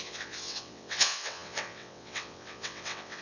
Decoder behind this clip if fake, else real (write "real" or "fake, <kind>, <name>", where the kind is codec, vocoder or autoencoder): fake, vocoder, WaveNeXt